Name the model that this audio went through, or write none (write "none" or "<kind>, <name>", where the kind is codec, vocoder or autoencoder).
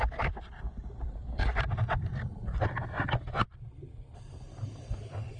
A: none